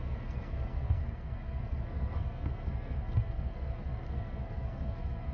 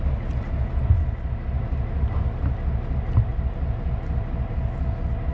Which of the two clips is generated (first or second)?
first